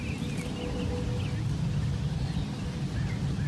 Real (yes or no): yes